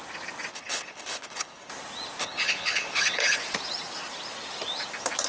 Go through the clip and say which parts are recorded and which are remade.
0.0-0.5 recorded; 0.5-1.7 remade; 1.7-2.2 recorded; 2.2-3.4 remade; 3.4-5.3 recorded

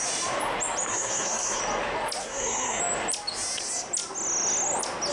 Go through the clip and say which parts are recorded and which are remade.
0.0-0.9 recorded; 0.9-1.6 remade; 1.6-2.2 recorded; 2.2-2.8 remade; 2.8-5.1 recorded

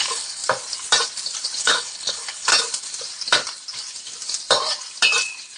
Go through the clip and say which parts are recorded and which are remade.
0.0-0.4 remade; 0.4-1.6 recorded; 1.6-2.5 remade; 2.5-5.6 recorded

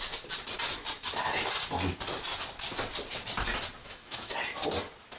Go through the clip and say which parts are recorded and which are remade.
0.0-3.8 recorded; 3.8-4.3 remade; 4.3-5.2 recorded

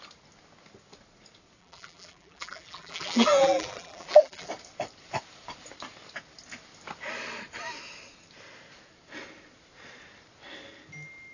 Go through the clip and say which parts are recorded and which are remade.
0.0-1.6 recorded; 1.6-4.5 remade; 4.5-11.3 recorded